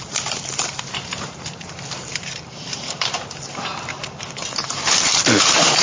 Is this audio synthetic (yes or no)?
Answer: yes